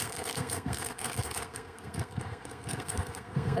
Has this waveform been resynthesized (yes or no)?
yes